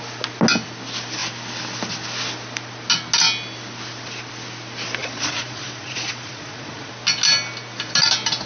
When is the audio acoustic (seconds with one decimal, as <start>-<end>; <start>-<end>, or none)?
0.0-5.0; 6.9-8.5